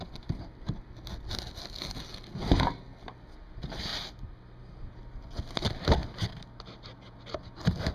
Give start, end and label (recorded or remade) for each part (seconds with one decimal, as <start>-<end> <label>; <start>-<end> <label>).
0.0-7.9 recorded